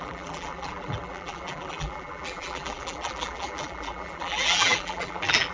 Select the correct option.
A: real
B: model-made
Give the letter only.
B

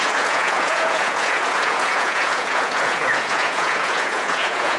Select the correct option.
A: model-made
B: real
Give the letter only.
A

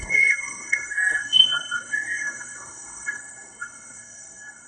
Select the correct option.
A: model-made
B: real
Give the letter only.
A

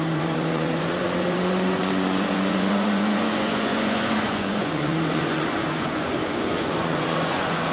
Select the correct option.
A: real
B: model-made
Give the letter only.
B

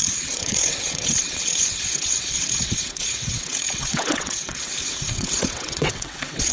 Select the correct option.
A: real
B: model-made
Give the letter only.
B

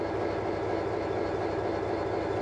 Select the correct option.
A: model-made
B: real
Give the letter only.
B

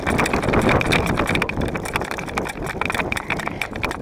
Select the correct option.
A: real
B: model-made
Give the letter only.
A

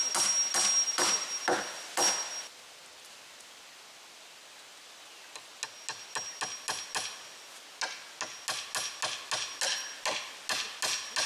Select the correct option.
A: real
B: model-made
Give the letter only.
A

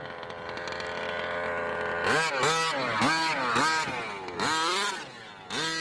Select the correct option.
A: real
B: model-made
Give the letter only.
A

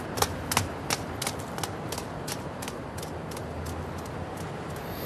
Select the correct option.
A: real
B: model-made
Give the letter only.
A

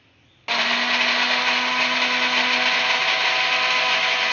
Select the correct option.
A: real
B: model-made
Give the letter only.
A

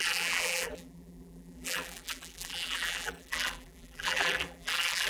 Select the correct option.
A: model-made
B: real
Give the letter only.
A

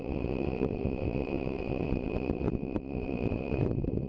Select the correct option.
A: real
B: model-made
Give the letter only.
B